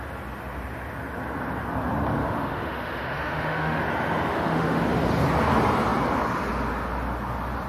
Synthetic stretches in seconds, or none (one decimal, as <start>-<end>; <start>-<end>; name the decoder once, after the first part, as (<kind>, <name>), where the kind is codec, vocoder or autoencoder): 2.2-3.8 (autoencoder, DAC-VAE); 4.3-4.8